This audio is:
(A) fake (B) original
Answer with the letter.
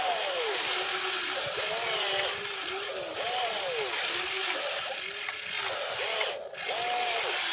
B